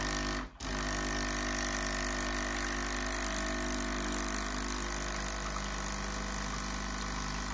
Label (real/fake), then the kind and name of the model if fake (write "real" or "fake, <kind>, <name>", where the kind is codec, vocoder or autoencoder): real